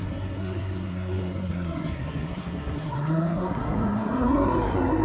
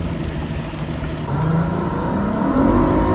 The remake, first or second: first